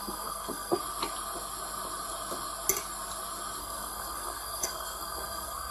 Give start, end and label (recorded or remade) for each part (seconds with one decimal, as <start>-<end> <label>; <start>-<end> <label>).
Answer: 0.0-0.8 remade; 0.8-3.6 recorded; 3.6-5.7 remade